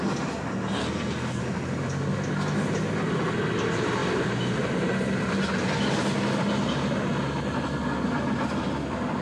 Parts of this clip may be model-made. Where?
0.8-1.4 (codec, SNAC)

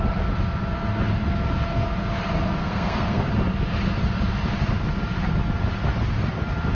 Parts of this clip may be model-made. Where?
2.6-3.3 (codec, SNAC)